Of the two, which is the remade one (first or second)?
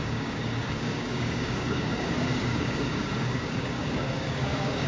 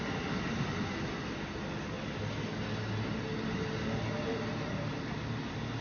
first